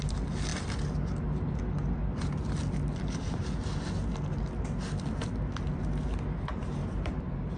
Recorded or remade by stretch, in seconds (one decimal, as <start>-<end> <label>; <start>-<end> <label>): 0.0-6.8 recorded; 6.8-7.6 remade